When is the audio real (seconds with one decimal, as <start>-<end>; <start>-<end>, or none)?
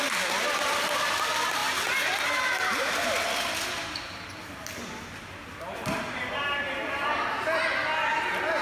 0.0-8.6